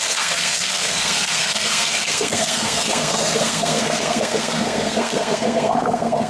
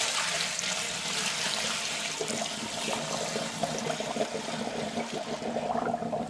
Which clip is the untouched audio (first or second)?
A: second